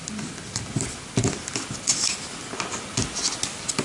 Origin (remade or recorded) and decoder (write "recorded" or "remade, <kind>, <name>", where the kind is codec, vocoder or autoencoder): recorded